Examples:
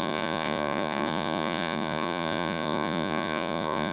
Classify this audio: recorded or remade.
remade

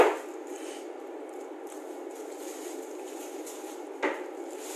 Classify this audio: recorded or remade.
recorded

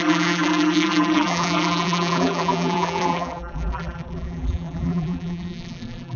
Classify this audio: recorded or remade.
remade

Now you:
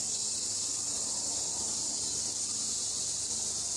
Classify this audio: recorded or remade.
recorded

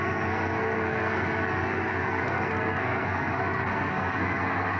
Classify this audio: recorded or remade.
remade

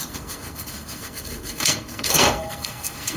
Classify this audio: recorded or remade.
remade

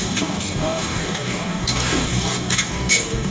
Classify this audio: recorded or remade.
remade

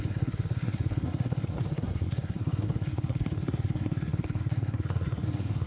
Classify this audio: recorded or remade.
remade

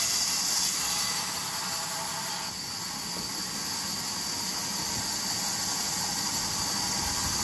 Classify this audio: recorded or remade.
recorded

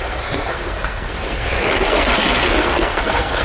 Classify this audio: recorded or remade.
remade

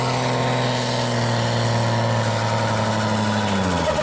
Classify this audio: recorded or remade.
recorded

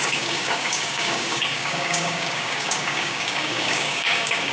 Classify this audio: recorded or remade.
remade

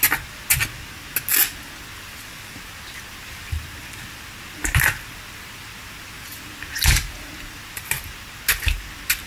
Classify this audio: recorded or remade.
recorded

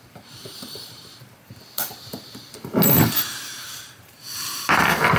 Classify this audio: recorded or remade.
remade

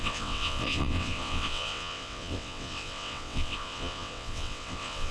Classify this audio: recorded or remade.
remade